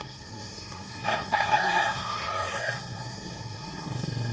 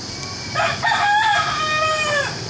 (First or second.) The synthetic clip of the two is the first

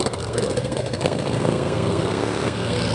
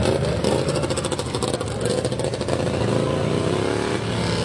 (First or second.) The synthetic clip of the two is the first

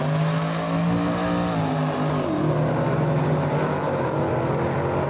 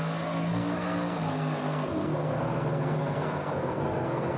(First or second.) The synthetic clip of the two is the second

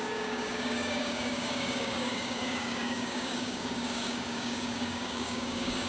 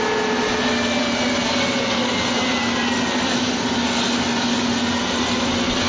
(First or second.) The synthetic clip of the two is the first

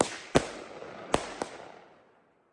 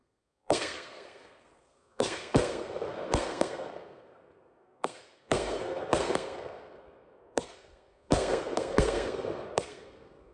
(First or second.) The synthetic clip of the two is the second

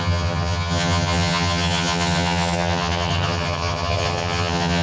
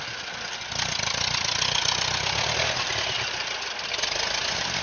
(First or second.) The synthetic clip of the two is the first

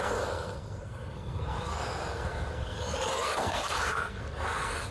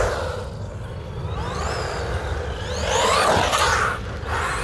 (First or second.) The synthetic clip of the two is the first